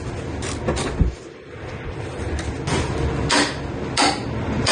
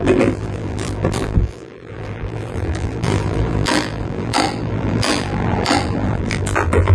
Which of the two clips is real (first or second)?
first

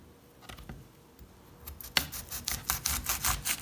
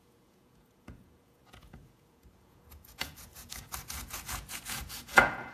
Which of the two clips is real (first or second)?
first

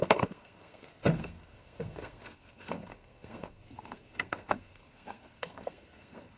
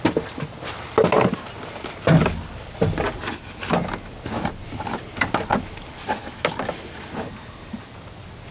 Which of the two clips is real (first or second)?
second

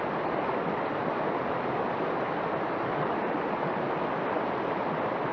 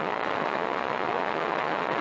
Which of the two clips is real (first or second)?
first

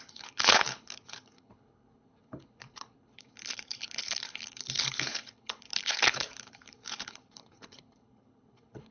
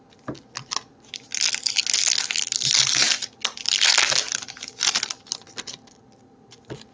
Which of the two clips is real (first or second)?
second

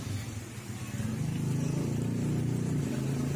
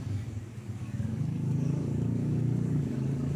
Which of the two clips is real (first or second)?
first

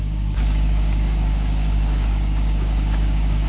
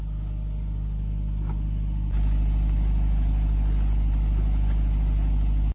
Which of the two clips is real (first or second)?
second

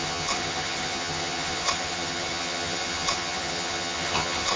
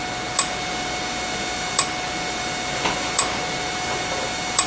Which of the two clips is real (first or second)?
second